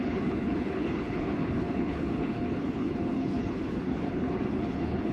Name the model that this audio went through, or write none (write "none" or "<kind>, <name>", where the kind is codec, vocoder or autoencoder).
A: codec, HILCodec